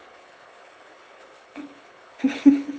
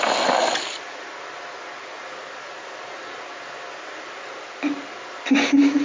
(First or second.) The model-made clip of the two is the first